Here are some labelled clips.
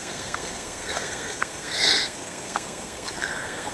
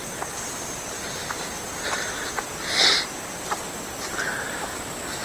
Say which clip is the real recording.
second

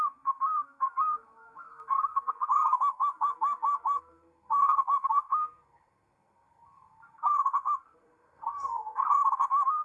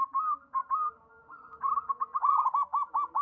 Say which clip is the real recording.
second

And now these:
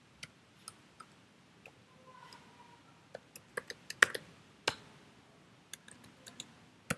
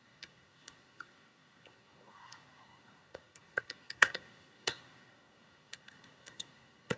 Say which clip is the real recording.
first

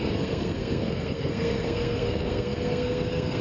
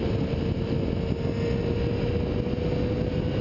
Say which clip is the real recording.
second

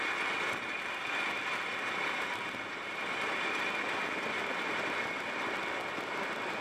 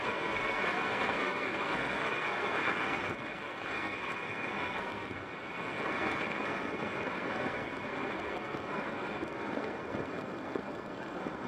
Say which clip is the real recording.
first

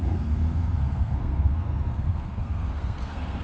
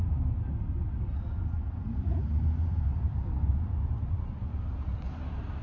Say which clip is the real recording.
second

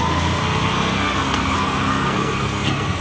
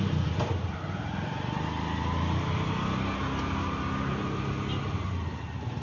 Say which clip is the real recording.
second